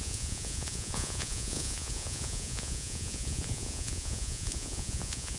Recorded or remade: remade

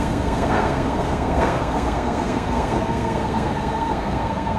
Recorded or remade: remade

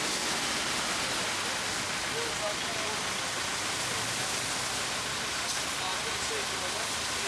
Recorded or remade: recorded